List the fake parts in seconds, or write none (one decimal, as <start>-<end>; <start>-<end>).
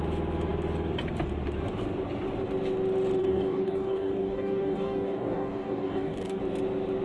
3.2-6.4